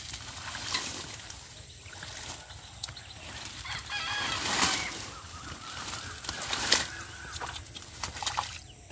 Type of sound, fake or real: real